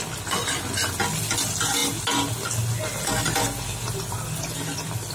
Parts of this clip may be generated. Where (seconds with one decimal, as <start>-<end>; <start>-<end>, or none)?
none